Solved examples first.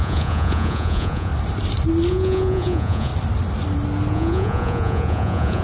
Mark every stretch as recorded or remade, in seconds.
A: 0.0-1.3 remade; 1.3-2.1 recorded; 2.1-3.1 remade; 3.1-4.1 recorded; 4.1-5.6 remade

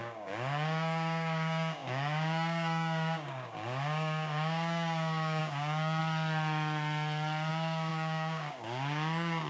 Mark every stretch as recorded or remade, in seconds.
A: 0.0-6.0 remade; 6.0-7.5 recorded; 7.5-9.5 remade

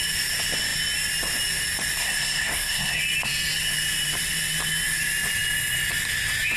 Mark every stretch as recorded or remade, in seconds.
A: 0.0-2.0 recorded; 2.0-3.0 remade; 3.0-6.6 recorded

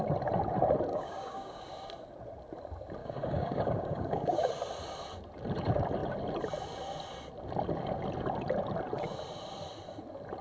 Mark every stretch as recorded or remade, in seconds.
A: 0.0-0.9 recorded; 0.9-1.6 remade; 1.6-3.0 recorded; 3.0-4.5 remade; 4.5-10.4 recorded

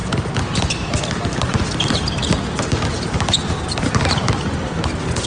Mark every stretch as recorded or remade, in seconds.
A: 0.0-5.3 recorded

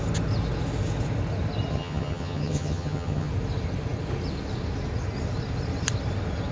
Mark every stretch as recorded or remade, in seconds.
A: 0.0-1.7 recorded; 1.7-3.3 remade; 3.3-6.5 recorded

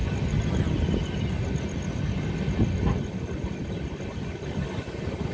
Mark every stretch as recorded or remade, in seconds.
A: 0.0-5.3 recorded